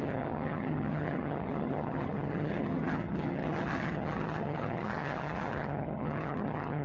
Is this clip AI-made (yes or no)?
yes